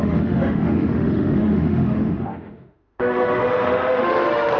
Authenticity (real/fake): fake